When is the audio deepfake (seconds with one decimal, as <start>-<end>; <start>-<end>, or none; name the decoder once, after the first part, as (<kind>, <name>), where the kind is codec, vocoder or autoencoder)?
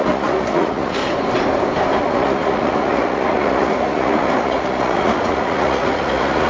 0.0-1.0 (vocoder, Vocos); 2.0-6.5